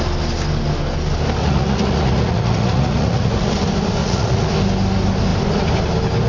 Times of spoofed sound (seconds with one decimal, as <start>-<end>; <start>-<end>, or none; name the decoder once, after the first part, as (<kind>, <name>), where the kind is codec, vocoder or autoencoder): 1.4-3.5 (vocoder, Vocos); 4.0-4.5